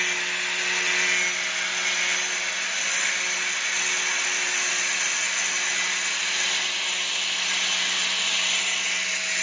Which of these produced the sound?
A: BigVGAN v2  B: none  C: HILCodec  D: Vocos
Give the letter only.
B